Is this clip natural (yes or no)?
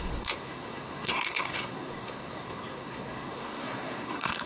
no